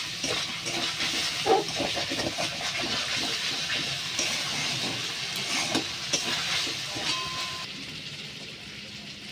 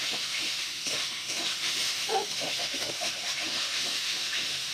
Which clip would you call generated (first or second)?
second